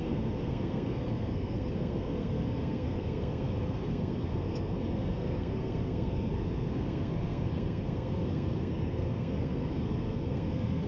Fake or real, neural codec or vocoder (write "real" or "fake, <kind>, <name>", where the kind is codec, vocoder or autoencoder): fake, codec, SNAC